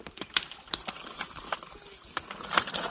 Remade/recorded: remade